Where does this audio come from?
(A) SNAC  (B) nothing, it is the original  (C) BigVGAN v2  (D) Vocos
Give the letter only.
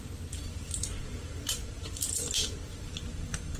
B